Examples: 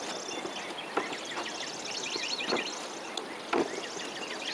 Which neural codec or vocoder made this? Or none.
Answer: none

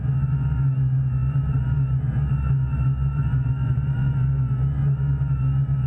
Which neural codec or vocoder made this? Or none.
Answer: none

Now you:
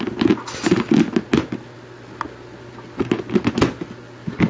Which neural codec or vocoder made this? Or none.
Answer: none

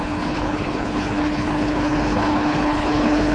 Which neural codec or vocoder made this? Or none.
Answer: codec, HILCodec